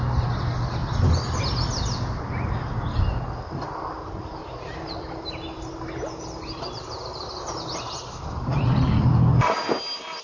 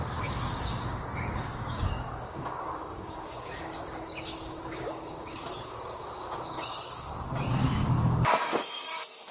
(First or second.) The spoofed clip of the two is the second